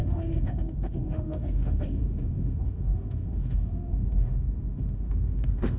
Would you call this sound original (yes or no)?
no